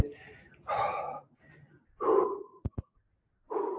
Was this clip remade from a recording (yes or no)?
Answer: no